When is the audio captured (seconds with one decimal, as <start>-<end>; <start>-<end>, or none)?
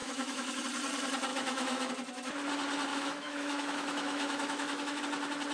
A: 0.6-1.3; 1.9-2.9; 5.0-5.5